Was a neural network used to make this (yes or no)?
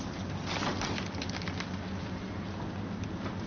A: no